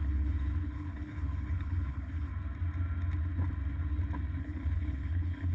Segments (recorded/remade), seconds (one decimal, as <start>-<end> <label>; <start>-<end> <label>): 0.0-2.3 remade; 2.3-4.4 recorded; 4.4-5.5 remade